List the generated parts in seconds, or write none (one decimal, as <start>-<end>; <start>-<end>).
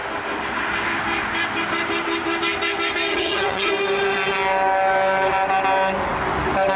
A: 3.1-3.7